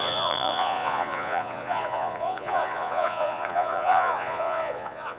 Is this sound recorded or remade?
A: remade